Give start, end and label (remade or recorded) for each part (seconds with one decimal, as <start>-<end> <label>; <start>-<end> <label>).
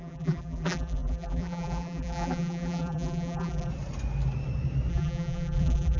0.0-3.7 remade; 3.7-4.9 recorded; 4.9-6.0 remade